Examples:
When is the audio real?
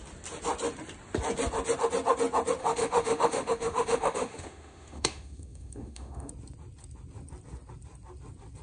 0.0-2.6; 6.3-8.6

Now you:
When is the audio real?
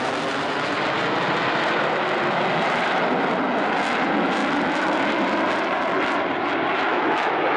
0.0-6.9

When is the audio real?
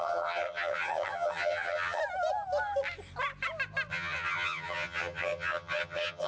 2.0-3.9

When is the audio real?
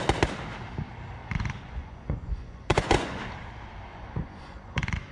0.0-1.2; 3.2-3.9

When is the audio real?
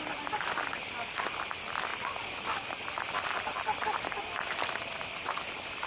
0.0-1.9; 5.0-5.9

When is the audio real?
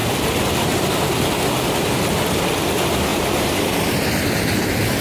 0.0-3.1; 4.1-5.0